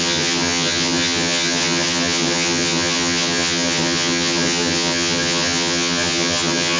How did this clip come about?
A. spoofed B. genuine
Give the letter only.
A